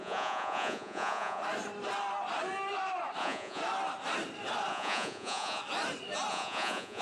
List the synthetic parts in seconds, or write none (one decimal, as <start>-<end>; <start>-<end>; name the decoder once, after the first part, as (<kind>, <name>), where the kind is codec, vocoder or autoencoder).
0.0-1.4 (vocoder, Vocos); 3.2-3.6; 4.7-5.6; 6.3-7.0